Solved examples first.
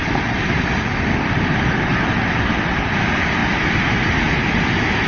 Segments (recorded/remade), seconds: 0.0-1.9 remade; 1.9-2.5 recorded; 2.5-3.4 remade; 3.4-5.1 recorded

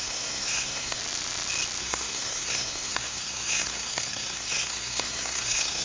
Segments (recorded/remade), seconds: 0.0-1.0 remade; 1.0-1.8 recorded; 1.8-5.8 remade

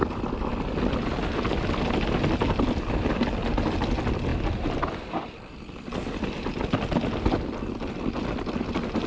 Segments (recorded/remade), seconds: 0.0-9.1 recorded